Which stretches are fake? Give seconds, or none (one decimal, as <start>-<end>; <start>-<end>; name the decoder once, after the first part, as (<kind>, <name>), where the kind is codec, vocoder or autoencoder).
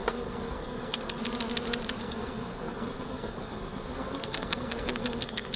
0.0-1.2 (codec, SNAC); 2.0-5.6